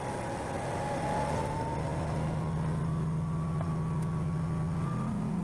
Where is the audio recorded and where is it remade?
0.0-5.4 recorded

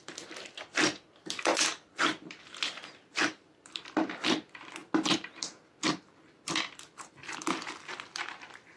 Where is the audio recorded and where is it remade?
0.0-4.8 remade; 4.8-5.3 recorded; 5.3-8.8 remade

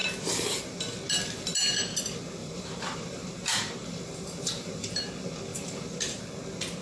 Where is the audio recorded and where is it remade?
0.0-2.4 recorded; 2.4-4.8 remade; 4.8-5.5 recorded; 5.5-6.2 remade; 6.2-6.8 recorded

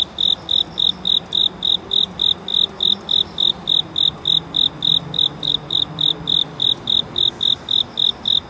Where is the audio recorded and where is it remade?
0.0-1.4 recorded; 1.4-2.1 remade; 2.1-8.5 recorded